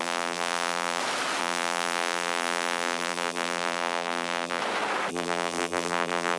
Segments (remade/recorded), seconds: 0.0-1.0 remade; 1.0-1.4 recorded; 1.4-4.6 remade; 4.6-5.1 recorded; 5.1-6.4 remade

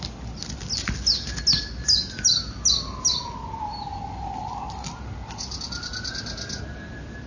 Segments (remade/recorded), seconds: 0.0-7.3 recorded

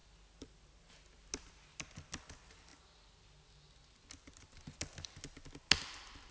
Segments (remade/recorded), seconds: 0.0-6.3 recorded

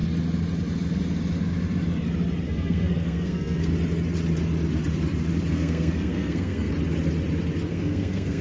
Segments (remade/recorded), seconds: 0.0-2.4 recorded; 2.4-3.7 remade; 3.7-5.5 recorded; 5.5-6.7 remade; 6.7-7.7 recorded; 7.7-8.4 remade

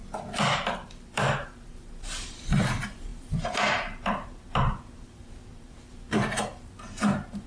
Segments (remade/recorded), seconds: 0.0-0.7 recorded; 0.7-7.5 remade

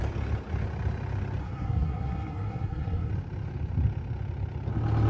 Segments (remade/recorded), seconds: 0.0-1.4 recorded; 1.4-3.1 remade; 3.1-5.1 recorded